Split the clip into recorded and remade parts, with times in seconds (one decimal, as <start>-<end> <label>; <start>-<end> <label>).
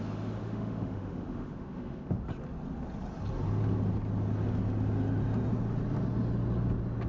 0.0-0.4 recorded; 0.4-2.2 remade; 2.2-7.1 recorded